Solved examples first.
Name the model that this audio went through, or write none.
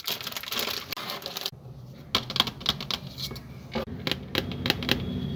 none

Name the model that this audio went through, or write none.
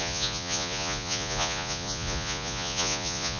vocoder, Vocos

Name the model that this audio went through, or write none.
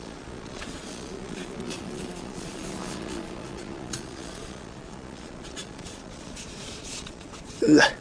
vocoder, Vocos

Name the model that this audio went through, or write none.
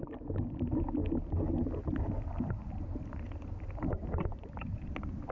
none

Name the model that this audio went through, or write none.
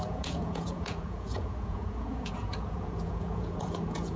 vocoder, Vocos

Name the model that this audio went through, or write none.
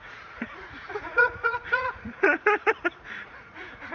vocoder, Vocos